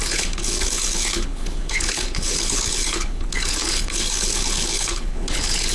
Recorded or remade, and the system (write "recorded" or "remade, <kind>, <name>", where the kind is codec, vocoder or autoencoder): remade, codec, HILCodec